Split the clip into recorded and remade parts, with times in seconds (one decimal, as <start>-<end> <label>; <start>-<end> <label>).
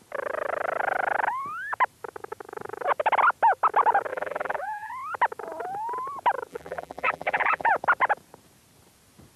0.0-4.1 recorded; 4.1-4.9 remade; 4.9-6.5 recorded; 6.5-7.7 remade; 7.7-9.4 recorded